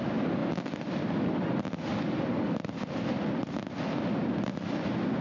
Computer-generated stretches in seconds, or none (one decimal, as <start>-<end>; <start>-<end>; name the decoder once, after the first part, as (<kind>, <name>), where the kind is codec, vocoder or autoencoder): none